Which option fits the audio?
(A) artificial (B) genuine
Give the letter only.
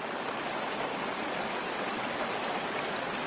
B